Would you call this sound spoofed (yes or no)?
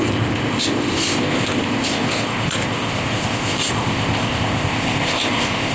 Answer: yes